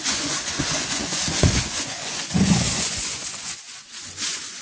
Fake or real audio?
fake